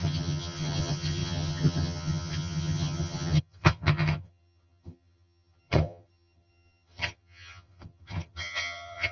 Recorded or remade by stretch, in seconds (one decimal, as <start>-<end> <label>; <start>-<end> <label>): 0.0-9.1 remade